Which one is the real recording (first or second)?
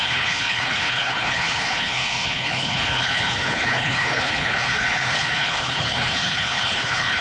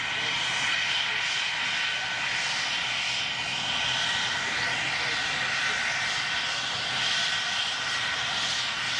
second